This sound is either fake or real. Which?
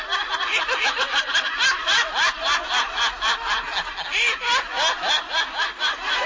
real